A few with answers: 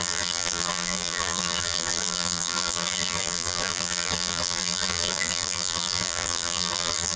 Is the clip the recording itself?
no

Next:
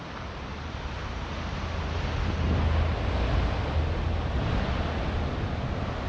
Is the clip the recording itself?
yes